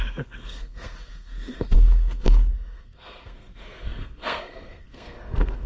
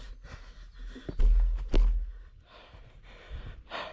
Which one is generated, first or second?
first